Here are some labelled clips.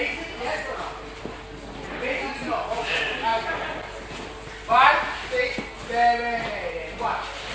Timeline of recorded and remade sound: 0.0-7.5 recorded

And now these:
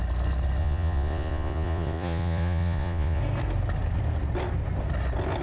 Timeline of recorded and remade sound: 0.0-0.6 recorded; 0.6-3.2 remade; 3.2-5.4 recorded

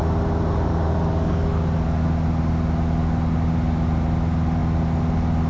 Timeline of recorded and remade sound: 0.0-5.5 recorded

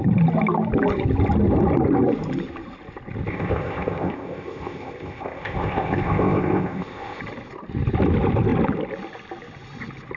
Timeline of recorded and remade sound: 0.0-3.3 recorded; 3.3-7.2 remade; 7.2-10.2 recorded